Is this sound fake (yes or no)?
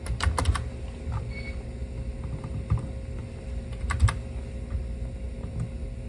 no